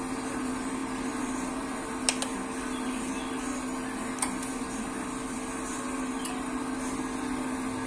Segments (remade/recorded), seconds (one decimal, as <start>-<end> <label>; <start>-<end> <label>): 0.0-7.9 recorded